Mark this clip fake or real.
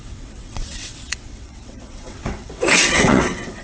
fake